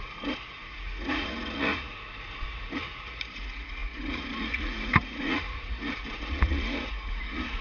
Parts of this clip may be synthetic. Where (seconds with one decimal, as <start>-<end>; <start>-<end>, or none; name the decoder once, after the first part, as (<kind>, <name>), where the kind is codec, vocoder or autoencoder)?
0.0-7.6 (vocoder, Vocos)